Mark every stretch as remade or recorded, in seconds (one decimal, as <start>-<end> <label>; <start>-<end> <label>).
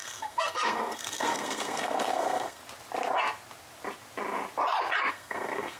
0.0-2.6 remade; 2.6-5.1 recorded; 5.1-5.8 remade